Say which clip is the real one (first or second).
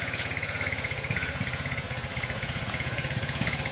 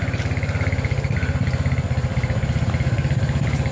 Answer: second